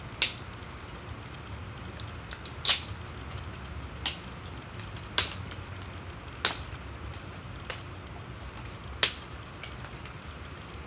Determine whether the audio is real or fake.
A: real